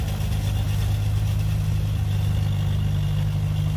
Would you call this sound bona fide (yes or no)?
yes